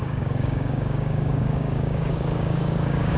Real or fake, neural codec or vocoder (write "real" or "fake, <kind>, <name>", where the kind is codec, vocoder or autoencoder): fake, codec, DAC